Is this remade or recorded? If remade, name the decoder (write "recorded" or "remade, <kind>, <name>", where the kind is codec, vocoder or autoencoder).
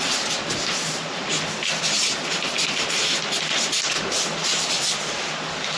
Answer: recorded